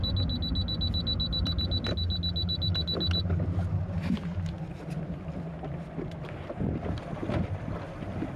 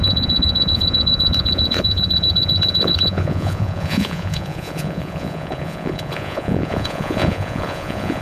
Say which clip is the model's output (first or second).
second